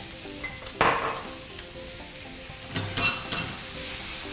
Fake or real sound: real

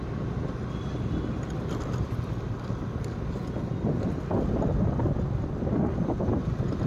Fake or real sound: real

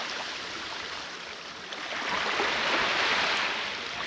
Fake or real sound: real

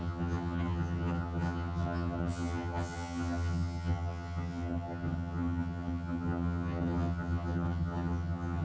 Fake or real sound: fake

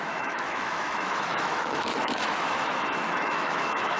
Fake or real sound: fake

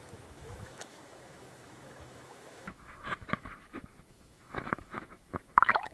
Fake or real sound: fake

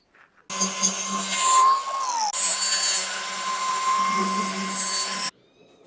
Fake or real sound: real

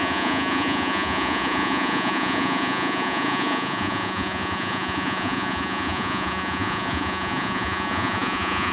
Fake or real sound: fake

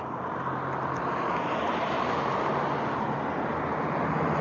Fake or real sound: real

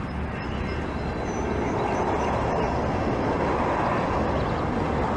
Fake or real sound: real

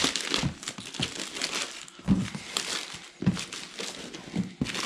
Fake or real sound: real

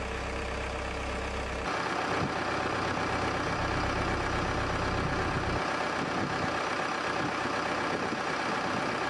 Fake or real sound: real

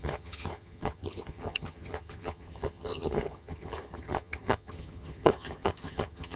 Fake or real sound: fake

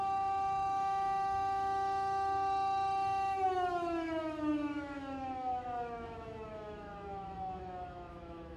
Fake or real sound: fake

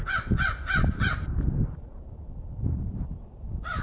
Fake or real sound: real